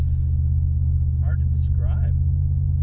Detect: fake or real real